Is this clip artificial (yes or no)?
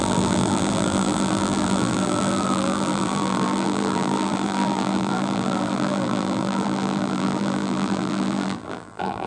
yes